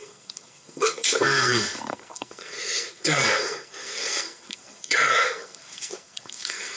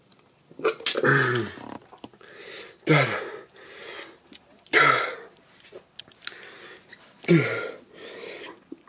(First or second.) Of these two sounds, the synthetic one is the first